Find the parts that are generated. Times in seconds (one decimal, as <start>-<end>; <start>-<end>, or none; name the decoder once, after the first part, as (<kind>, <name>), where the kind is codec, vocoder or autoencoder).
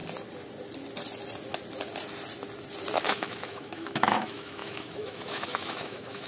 3.0-6.3 (autoencoder, DAC-VAE)